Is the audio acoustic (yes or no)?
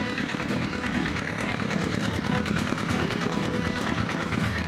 no